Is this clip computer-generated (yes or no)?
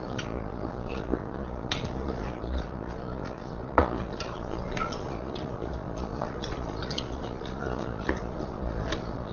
yes